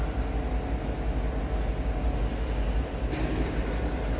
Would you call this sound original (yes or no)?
yes